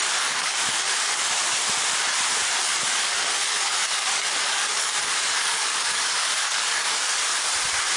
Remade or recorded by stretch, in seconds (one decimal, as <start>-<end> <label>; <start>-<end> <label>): 0.0-1.4 remade; 1.4-2.6 recorded; 2.6-7.2 remade; 7.2-8.0 recorded